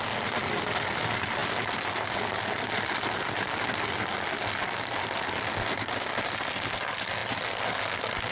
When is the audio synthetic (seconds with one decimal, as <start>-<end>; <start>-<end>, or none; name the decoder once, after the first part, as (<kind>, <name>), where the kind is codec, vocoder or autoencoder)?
none